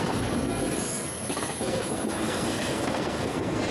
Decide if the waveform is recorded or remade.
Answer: remade